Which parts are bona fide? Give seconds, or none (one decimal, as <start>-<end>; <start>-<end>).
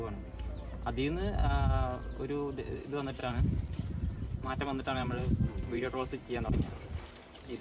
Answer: 0.0-3.2